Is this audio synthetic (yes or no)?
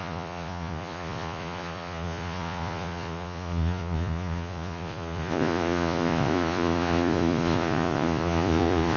yes